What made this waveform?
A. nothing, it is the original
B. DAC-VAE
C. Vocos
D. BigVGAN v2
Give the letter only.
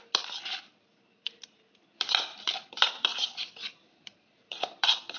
D